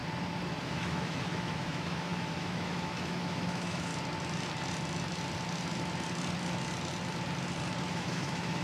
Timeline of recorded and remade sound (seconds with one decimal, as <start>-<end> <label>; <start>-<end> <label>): 0.0-0.6 recorded; 0.6-3.9 remade; 3.9-7.9 recorded; 7.9-8.6 remade